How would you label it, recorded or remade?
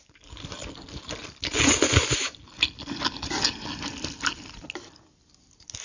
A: recorded